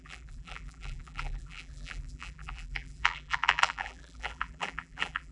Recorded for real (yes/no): no